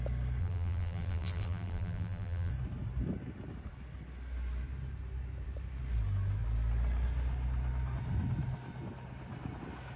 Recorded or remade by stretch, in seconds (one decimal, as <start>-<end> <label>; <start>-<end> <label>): 0.0-0.4 recorded; 0.4-2.5 remade; 2.5-10.0 recorded